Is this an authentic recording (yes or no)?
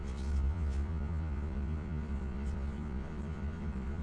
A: no